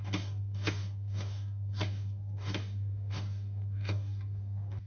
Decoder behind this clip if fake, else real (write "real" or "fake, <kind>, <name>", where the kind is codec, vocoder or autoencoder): fake, codec, DAC